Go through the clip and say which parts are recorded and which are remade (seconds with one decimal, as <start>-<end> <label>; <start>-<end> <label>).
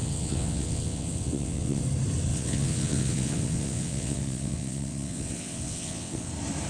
0.0-1.8 remade; 1.8-2.3 recorded; 2.3-6.3 remade; 6.3-6.7 recorded